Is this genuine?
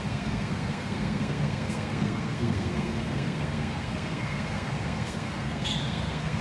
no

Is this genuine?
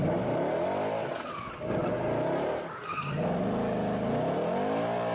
yes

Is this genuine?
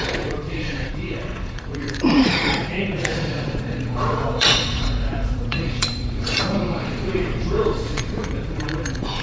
no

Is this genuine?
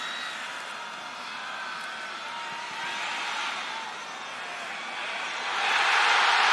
yes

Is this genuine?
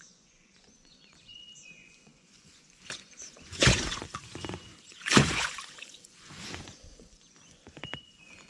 no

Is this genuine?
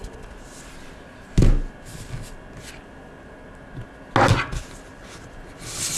yes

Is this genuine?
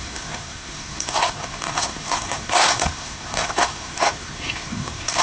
no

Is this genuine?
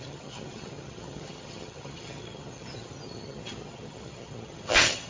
no